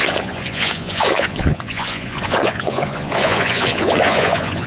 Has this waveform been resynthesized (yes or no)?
yes